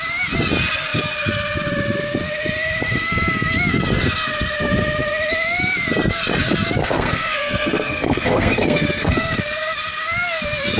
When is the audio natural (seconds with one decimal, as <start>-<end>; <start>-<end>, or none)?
0.0-6.8; 9.4-10.8